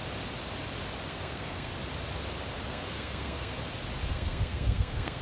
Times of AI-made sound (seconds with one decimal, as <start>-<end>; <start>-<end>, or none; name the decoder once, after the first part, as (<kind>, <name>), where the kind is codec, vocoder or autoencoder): 1.1-1.7 (codec, SNAC); 2.7-3.5; 4.1-5.2